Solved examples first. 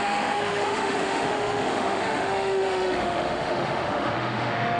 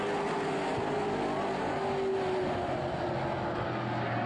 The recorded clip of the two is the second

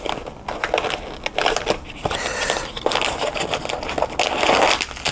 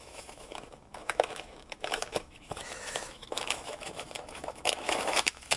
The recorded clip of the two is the first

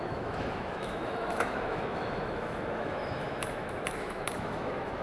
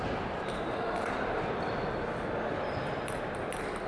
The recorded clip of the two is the second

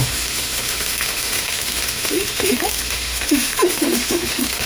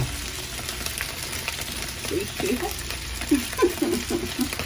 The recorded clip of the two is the second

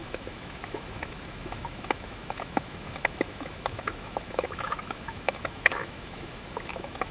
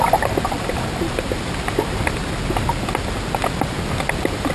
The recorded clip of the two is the second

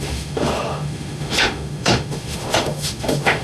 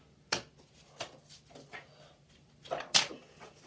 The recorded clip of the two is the second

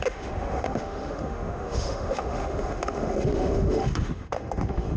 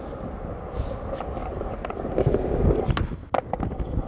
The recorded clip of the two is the second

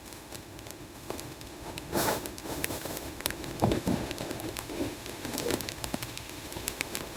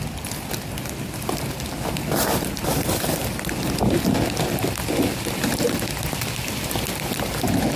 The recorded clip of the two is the second